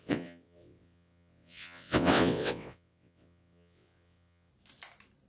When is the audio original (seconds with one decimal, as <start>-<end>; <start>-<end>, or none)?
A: 4.5-5.3